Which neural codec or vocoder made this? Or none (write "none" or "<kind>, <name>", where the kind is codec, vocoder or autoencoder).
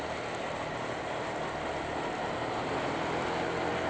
none